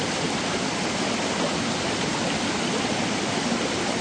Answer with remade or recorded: recorded